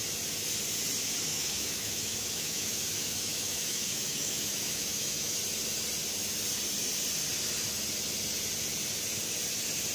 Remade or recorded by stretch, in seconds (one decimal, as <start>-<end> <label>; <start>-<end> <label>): 0.0-1.3 recorded; 1.3-5.4 remade; 5.4-9.9 recorded